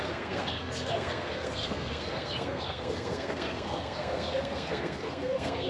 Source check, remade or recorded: remade